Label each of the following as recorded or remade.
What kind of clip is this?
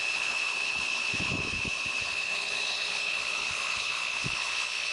remade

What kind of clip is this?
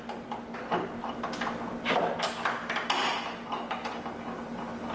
recorded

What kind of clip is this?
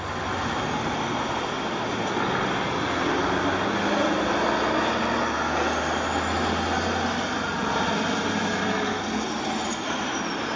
recorded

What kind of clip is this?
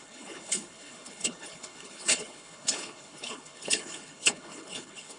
remade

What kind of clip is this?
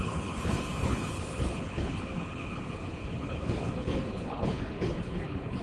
remade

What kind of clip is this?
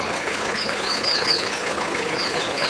remade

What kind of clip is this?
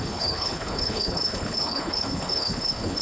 remade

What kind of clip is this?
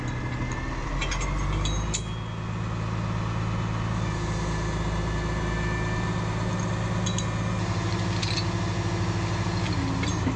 recorded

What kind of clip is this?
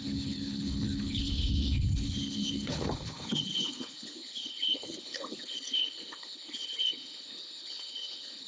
remade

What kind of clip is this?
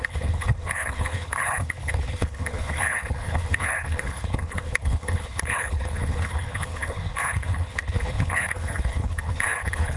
remade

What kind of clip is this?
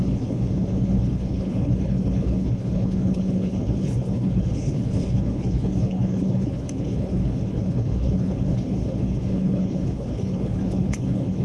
remade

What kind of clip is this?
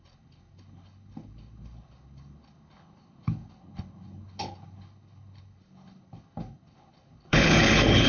remade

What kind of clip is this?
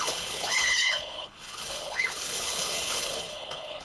remade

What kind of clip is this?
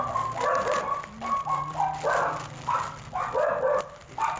recorded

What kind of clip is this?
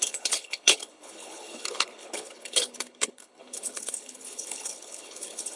remade